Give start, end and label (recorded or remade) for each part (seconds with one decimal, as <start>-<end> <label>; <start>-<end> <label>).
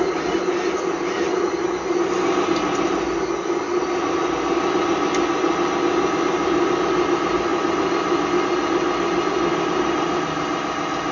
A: 0.0-11.1 recorded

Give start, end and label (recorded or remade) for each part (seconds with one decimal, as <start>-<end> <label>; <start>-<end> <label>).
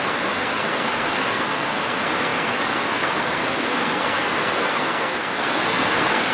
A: 0.0-6.3 remade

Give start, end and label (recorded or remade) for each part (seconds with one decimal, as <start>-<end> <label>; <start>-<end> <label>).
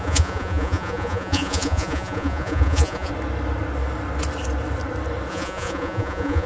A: 0.0-3.1 remade; 3.1-5.3 recorded; 5.3-6.5 remade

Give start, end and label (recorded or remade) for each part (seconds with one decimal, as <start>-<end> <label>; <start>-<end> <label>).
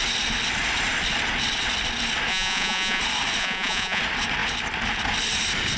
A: 0.0-2.3 recorded; 2.3-3.0 remade; 3.0-3.4 recorded; 3.4-4.0 remade; 4.0-5.8 recorded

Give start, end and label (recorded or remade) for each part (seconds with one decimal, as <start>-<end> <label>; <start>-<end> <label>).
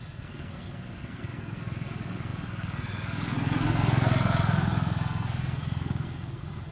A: 0.0-6.7 remade